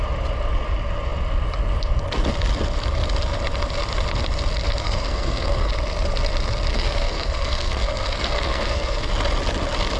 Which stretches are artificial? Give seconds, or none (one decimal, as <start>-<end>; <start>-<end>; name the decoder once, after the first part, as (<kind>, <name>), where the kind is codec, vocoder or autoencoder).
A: 4.8-5.7 (codec, SNAC); 6.7-9.1